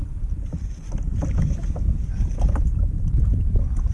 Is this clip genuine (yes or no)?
yes